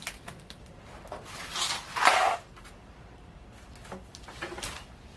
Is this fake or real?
real